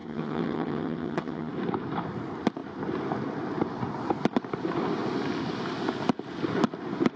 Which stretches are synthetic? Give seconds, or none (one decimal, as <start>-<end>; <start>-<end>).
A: 0.0-1.5